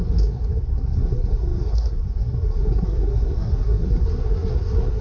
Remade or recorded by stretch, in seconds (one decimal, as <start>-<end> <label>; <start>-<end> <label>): 0.0-5.0 remade